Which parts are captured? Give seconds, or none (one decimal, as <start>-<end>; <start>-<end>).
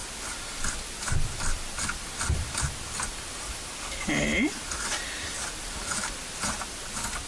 0.0-5.3; 6.1-7.3